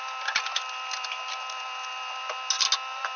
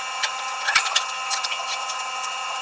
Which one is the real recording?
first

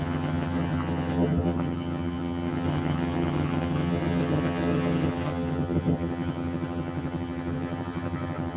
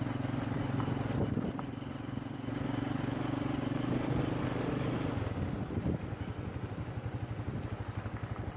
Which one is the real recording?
second